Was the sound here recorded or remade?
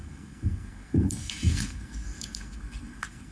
remade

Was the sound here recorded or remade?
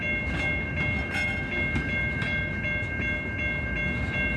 recorded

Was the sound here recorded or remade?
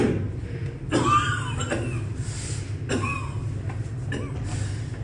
recorded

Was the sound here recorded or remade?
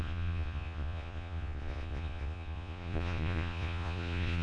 remade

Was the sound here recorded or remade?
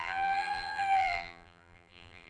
remade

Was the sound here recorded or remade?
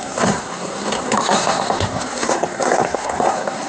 remade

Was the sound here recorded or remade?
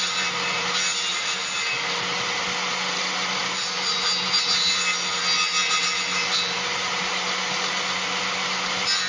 recorded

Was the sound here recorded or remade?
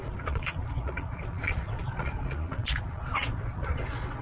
remade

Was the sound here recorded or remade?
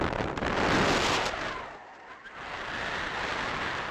recorded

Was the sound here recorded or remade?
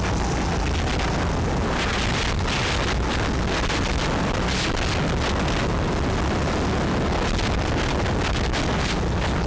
recorded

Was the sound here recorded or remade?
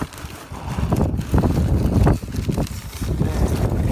recorded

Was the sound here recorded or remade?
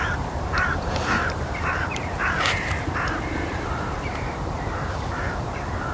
remade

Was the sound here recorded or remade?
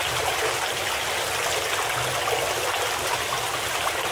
recorded